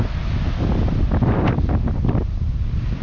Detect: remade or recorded recorded